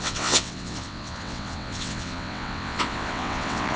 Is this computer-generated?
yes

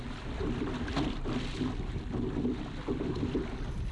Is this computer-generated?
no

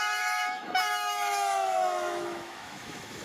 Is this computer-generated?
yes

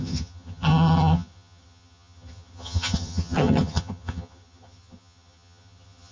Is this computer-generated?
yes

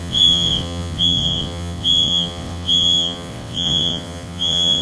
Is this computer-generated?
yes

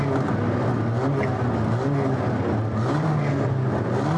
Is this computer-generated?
no